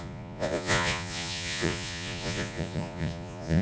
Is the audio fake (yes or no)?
yes